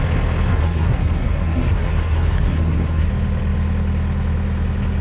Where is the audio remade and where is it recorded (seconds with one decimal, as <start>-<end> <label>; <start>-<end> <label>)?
0.0-0.5 recorded; 0.5-3.1 remade; 3.1-5.0 recorded